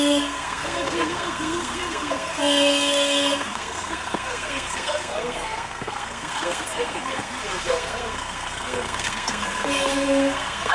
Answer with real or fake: fake